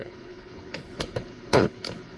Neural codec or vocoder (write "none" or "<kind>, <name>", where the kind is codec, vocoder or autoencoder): codec, HILCodec